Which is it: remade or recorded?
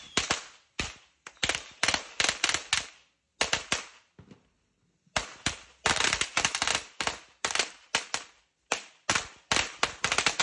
recorded